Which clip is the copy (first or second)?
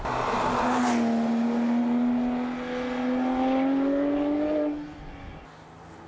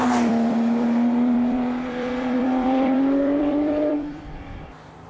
second